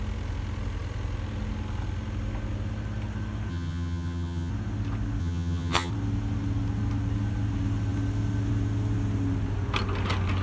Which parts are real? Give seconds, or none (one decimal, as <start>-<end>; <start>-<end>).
0.0-3.5; 4.5-5.2; 5.9-10.4

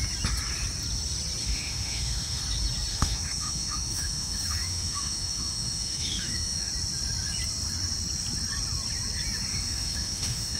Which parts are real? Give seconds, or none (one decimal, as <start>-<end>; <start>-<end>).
0.0-1.4; 2.4-2.9; 6.7-9.5

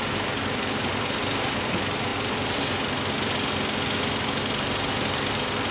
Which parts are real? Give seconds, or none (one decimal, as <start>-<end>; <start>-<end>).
0.0-5.7

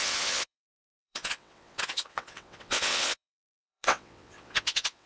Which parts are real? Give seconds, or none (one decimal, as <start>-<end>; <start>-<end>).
none

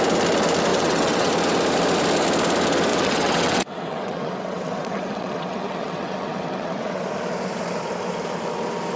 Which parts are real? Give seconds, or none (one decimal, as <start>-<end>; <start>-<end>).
0.0-0.7; 1.3-2.9; 7.0-9.0

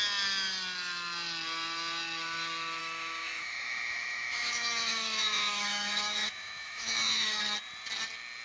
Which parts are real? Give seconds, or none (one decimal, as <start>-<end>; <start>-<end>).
0.0-2.8; 7.4-8.4

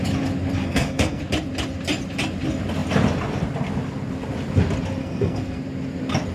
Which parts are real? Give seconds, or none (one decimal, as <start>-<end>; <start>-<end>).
0.0-0.6; 1.2-5.0; 5.6-6.3